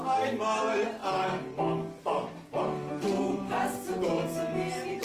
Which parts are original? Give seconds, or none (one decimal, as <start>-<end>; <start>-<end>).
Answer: 1.0-2.6; 4.1-5.0